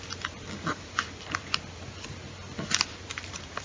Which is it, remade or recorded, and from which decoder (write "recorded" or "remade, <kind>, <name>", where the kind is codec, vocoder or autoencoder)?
remade, vocoder, BigVGAN v2